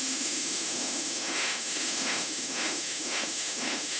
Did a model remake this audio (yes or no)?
yes